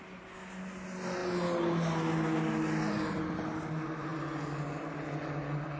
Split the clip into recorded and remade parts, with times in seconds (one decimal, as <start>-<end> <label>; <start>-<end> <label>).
0.0-5.8 recorded